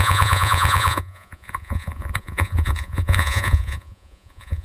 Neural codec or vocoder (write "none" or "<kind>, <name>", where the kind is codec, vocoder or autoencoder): vocoder, Vocos